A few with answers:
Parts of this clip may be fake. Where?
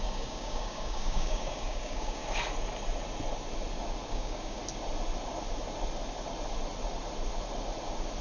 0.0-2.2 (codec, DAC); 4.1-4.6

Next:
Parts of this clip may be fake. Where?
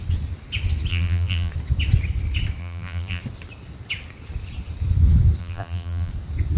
0.9-1.5 (vocoder, BigVGAN v2); 2.6-3.2; 5.4-6.1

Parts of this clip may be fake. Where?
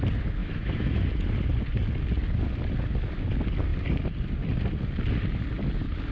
0.4-1.0 (autoencoder, DAC-VAE)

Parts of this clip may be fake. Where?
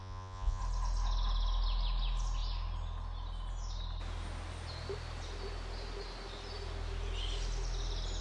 0.0-0.6 (vocoder, Vocos)